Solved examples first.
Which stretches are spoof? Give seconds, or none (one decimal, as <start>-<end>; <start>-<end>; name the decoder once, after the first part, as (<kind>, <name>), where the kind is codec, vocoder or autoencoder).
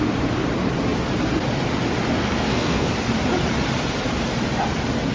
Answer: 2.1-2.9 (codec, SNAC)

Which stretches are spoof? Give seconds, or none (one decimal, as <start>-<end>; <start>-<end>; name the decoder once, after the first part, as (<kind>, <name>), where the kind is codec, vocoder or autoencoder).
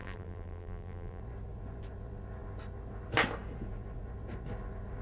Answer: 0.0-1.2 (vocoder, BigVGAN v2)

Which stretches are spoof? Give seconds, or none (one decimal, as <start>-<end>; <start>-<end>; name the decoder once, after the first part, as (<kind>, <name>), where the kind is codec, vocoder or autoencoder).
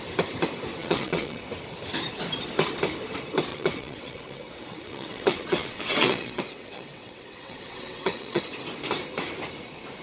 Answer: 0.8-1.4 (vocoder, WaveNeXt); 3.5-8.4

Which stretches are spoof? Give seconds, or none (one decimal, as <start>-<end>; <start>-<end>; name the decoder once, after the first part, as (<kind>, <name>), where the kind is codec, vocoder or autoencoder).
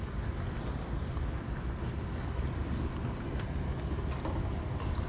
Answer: none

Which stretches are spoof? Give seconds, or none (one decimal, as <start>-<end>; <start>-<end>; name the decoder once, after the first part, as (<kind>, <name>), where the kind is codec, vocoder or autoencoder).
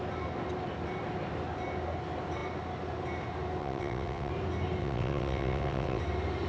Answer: 3.6-4.3 (vocoder, WaveNeXt); 4.8-6.0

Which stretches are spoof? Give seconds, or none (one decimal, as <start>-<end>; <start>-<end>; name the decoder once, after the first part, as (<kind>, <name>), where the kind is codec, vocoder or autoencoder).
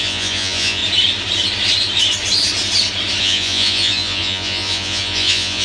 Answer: 0.0-0.8 (vocoder, Vocos); 3.2-5.6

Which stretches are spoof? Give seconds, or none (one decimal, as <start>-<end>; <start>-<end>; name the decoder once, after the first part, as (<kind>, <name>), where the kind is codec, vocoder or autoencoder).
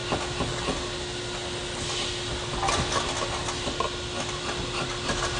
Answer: none